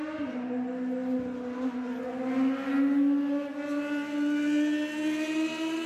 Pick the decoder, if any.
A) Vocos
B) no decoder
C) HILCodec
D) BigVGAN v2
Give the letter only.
B